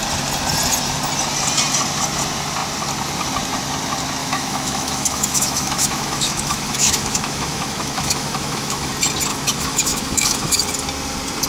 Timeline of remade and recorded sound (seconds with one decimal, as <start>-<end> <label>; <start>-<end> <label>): 0.0-4.2 recorded; 4.2-8.9 remade; 8.9-9.3 recorded; 9.3-10.6 remade; 10.6-11.5 recorded